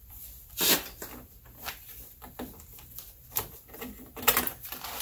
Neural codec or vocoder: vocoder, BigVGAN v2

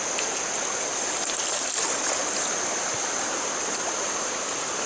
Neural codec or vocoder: none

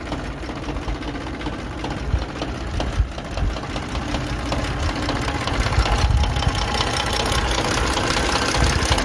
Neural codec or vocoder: none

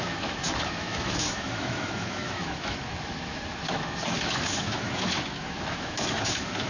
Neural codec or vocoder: autoencoder, DAC-VAE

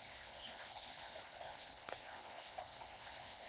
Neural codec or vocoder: codec, HILCodec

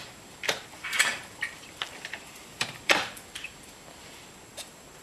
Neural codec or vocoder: vocoder, BigVGAN v2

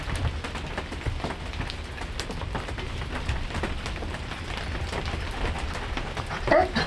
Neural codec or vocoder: none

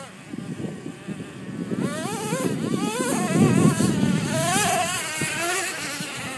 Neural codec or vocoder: none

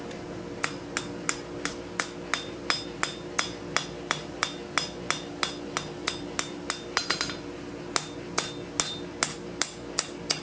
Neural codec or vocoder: none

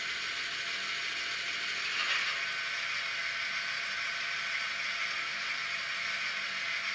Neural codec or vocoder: none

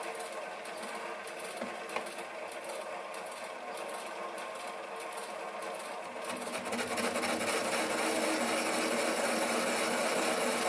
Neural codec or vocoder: none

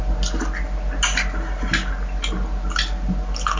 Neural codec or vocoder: none